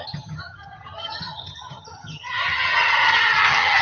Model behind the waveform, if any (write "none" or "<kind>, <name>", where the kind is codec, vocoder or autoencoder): vocoder, HiFi-GAN